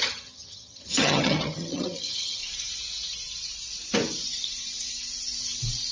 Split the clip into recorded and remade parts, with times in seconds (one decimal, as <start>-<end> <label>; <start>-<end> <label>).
0.0-2.4 remade; 2.4-5.9 recorded